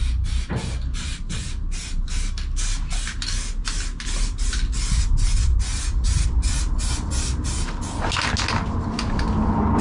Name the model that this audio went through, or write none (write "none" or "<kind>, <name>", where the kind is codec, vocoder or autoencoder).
none